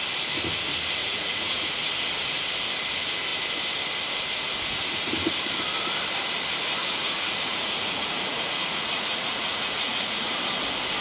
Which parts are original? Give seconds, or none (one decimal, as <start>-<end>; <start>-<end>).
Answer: 0.0-1.0; 1.9-6.8; 10.4-11.0